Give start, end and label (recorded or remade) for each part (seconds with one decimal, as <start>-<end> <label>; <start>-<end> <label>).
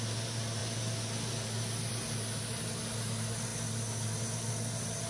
0.0-5.1 recorded